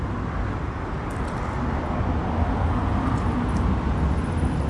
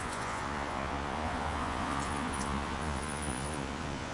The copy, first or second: second